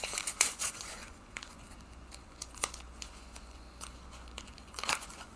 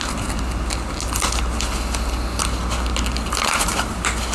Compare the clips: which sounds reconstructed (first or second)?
first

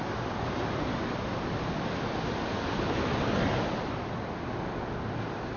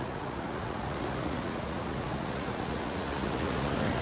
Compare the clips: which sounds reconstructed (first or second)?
second